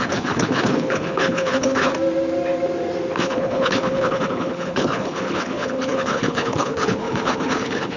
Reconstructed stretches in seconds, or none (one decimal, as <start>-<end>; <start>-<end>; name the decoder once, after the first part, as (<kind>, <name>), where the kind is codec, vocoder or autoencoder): 0.0-1.9 (codec, HILCodec); 3.2-8.0